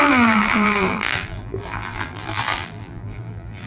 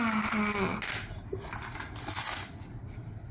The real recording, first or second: second